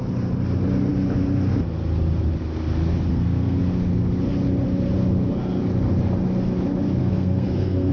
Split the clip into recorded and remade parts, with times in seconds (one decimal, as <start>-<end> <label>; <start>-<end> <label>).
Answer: 0.0-3.1 recorded; 3.1-3.6 remade; 3.6-7.0 recorded; 7.0-7.9 remade

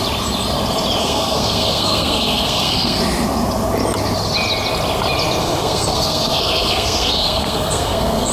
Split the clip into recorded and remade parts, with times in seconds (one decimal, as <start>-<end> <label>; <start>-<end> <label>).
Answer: 0.0-1.0 recorded; 1.0-3.0 remade; 3.0-5.4 recorded; 5.4-8.3 remade

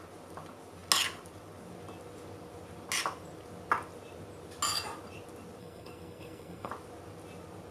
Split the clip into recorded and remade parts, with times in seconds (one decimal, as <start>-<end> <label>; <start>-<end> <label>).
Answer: 0.0-5.6 recorded; 5.6-6.7 remade; 6.7-7.7 recorded

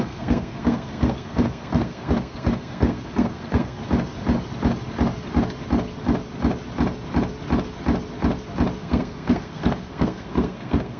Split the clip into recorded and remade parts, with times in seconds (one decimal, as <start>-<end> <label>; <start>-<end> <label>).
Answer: 0.0-3.8 remade; 3.8-8.8 recorded; 8.8-11.0 remade

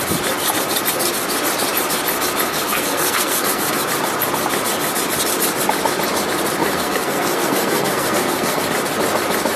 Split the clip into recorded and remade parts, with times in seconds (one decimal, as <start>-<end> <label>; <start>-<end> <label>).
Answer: 0.0-2.5 recorded; 2.5-3.7 remade; 3.7-6.6 recorded; 6.6-8.6 remade; 8.6-9.6 recorded

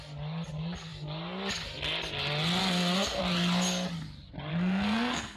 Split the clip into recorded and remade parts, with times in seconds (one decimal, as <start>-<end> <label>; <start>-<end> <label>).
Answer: 0.0-2.6 recorded; 2.6-3.2 remade; 3.2-4.5 recorded; 4.5-5.4 remade

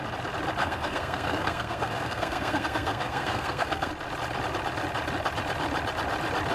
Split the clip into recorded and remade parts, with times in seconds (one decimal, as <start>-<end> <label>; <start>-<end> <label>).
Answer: 0.0-0.6 recorded; 0.6-3.9 remade; 3.9-6.5 recorded